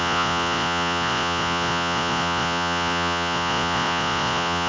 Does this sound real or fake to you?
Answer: fake